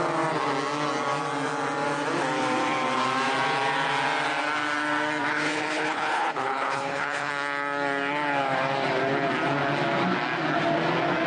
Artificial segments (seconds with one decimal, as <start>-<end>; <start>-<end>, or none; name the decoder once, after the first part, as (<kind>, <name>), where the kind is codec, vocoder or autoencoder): 5.3-7.3 (codec, HILCodec)